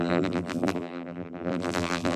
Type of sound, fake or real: fake